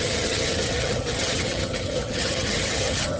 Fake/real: fake